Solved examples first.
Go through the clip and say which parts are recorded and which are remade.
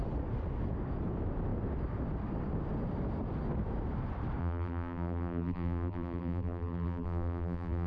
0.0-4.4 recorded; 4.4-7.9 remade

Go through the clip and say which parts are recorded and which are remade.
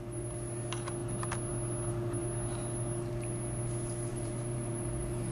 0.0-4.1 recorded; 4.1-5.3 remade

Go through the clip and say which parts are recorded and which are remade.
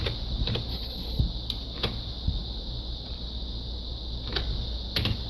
0.0-0.7 recorded; 0.7-1.2 remade; 1.2-5.3 recorded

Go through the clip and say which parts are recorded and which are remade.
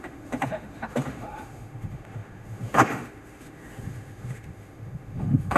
0.0-5.6 remade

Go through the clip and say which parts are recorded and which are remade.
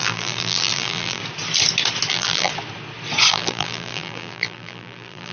0.0-1.2 remade; 1.2-2.1 recorded; 2.1-2.5 remade; 2.5-3.3 recorded; 3.3-5.3 remade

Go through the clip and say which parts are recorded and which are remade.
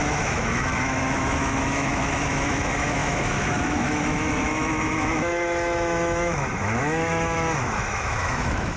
0.0-8.8 remade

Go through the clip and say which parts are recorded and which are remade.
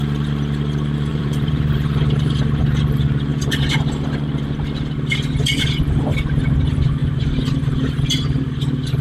0.0-1.1 recorded; 1.1-2.6 remade; 2.6-7.0 recorded; 7.0-9.0 remade